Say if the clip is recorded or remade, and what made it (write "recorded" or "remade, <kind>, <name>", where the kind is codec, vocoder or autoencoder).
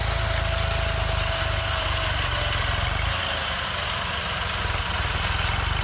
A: recorded